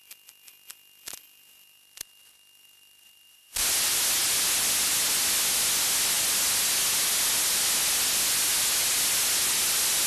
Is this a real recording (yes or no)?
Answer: yes